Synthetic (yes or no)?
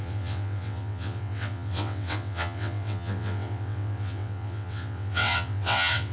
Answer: yes